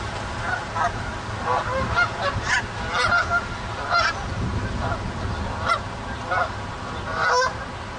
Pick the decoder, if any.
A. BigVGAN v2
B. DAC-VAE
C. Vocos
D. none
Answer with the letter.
D